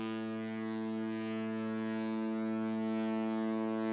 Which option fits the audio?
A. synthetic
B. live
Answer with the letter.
B